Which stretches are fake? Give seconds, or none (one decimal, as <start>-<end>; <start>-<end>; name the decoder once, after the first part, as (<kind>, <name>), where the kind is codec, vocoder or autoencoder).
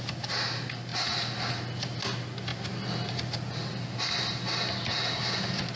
none